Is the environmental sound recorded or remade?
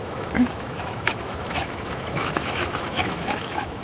remade